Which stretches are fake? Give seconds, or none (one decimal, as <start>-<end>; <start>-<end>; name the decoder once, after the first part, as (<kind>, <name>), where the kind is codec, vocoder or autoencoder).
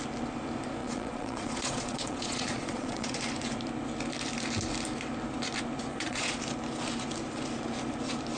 0.8-3.2 (vocoder, Vocos); 5.9-6.4